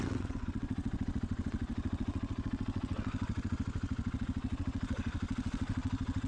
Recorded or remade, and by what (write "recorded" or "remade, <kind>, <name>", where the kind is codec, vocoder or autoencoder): remade, vocoder, WaveNeXt